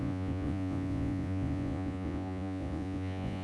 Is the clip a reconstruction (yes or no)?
yes